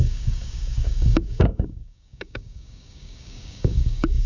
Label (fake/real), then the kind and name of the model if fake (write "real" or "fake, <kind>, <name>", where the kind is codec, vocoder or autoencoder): fake, codec, DAC